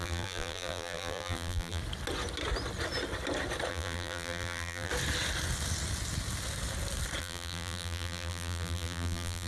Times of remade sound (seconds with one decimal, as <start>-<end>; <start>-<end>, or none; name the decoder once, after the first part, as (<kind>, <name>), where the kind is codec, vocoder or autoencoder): 0.0-1.8 (vocoder, BigVGAN v2); 3.7-4.9; 7.2-9.5